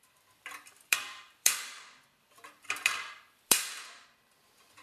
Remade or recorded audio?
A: remade